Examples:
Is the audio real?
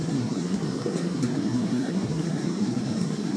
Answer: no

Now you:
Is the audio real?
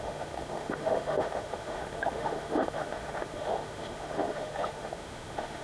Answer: no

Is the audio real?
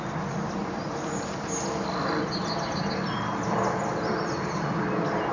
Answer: yes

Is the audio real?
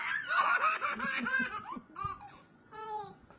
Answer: no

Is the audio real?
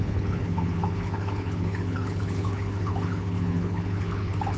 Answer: no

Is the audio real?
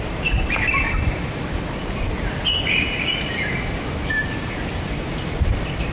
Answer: yes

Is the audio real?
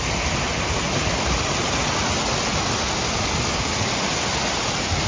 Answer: yes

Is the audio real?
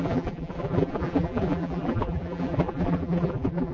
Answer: no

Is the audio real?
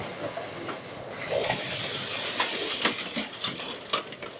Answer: yes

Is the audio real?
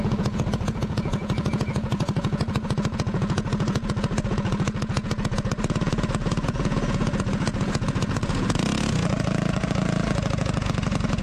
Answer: no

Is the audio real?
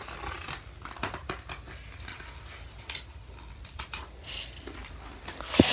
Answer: yes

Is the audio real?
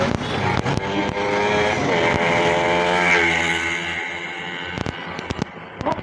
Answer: yes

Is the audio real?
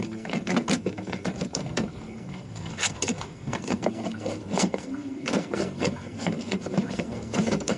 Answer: no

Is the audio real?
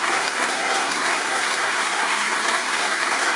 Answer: no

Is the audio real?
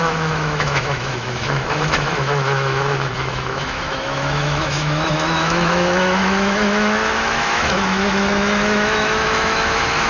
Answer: no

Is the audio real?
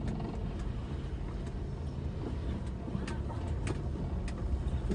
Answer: yes